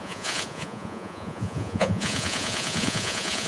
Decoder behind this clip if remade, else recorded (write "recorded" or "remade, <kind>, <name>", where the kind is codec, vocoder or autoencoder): remade, vocoder, Vocos